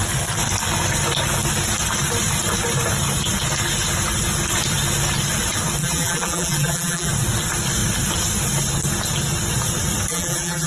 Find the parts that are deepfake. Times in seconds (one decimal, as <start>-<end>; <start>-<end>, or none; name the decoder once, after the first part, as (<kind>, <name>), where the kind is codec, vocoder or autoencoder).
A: 5.8-7.1 (vocoder, BigVGAN v2); 10.1-10.7